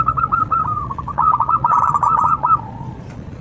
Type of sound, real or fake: fake